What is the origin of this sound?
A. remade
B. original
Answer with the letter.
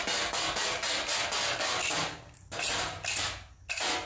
B